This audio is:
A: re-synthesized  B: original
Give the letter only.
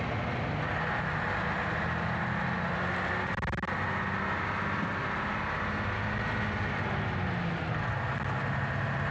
B